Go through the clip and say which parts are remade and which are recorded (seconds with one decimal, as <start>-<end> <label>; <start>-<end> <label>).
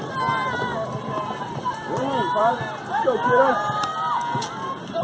0.0-5.0 recorded